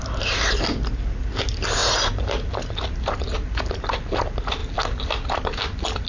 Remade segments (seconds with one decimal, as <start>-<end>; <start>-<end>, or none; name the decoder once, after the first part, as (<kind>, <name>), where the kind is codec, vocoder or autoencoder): none